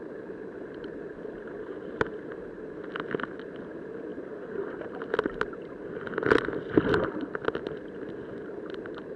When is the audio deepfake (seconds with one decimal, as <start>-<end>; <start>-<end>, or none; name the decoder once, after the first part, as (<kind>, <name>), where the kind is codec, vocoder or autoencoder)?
none